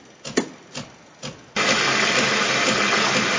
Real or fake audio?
real